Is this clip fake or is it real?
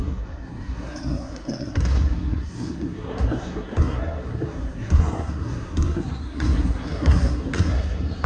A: fake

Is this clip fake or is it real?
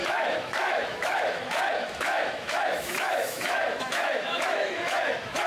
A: fake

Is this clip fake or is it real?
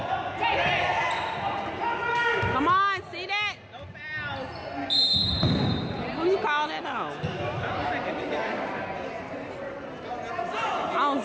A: real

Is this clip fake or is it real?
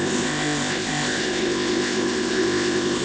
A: fake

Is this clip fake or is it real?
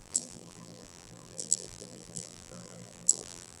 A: fake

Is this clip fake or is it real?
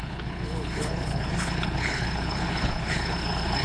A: fake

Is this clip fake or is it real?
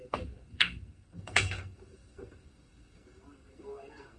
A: fake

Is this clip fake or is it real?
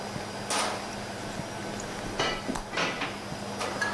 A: real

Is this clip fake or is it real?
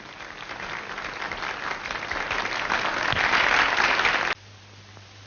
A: real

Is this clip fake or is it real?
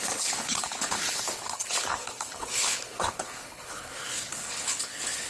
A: fake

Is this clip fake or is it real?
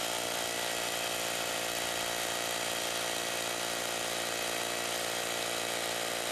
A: real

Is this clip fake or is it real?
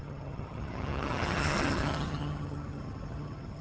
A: fake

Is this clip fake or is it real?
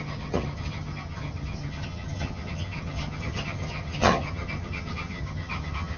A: fake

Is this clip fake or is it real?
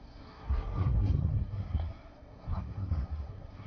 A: fake